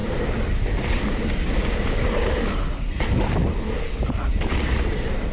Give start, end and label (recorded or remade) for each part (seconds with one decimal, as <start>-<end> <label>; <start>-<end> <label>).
0.0-5.3 recorded